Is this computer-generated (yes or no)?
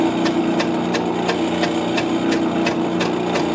no